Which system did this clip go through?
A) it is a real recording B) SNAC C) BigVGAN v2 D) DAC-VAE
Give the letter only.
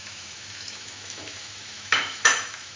D